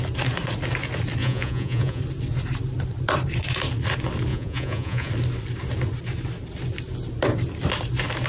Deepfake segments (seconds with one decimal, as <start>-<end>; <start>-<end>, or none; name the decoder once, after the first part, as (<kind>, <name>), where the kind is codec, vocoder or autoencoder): 1.2-2.0 (vocoder, Vocos); 4.3-5.1